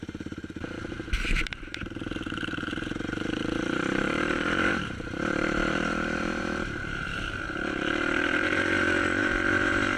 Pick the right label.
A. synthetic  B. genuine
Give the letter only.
A